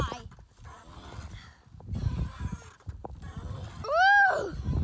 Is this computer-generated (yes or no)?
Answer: no